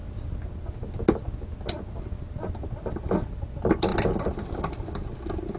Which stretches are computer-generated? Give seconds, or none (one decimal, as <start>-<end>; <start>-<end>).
none